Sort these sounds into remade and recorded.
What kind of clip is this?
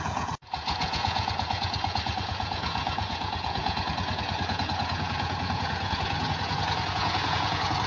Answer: remade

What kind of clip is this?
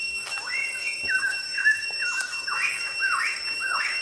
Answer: remade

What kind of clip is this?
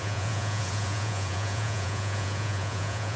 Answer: remade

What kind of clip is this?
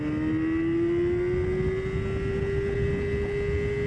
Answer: recorded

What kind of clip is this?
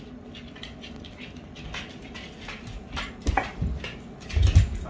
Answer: recorded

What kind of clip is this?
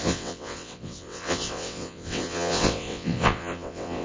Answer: remade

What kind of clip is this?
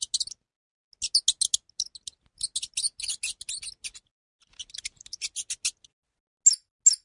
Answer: recorded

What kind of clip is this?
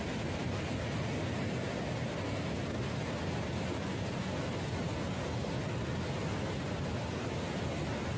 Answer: recorded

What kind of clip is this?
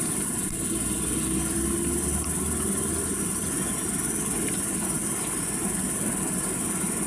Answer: recorded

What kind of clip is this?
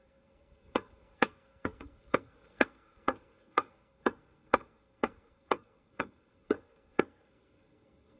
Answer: remade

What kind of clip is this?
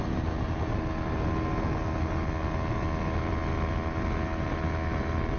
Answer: recorded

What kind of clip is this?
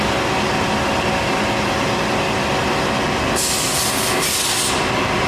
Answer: recorded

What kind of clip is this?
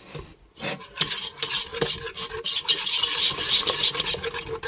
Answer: recorded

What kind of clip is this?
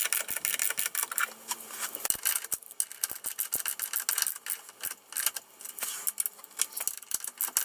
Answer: recorded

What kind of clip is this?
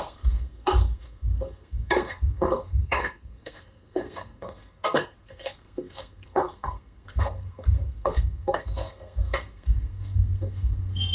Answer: remade